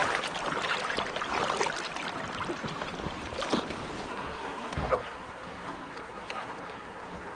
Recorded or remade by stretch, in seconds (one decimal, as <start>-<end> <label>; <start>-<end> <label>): 0.0-4.1 recorded; 4.1-7.4 remade